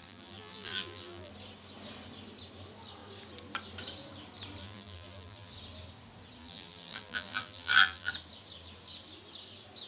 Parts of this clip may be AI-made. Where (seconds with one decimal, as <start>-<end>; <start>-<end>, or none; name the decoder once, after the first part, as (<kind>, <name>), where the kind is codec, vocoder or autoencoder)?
0.0-1.3 (vocoder, BigVGAN v2); 4.6-5.5; 6.4-8.1